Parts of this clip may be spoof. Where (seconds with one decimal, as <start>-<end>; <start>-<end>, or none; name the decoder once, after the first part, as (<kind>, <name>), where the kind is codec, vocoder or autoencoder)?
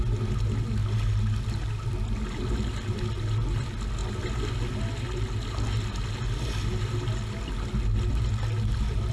none